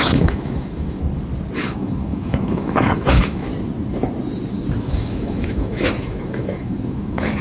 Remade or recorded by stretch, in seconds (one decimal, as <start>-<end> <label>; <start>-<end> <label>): 0.0-1.0 remade; 1.0-1.6 recorded; 1.6-3.5 remade; 3.5-4.8 recorded; 4.8-7.4 remade